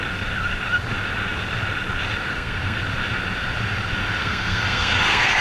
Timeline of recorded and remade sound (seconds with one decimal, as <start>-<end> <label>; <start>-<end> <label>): 0.0-2.3 recorded; 2.3-2.8 remade; 2.8-4.2 recorded; 4.2-5.4 remade